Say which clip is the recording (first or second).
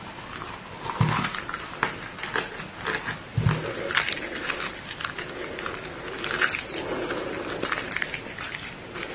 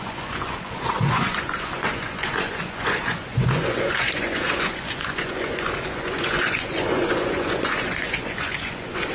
first